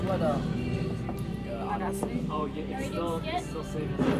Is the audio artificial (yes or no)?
yes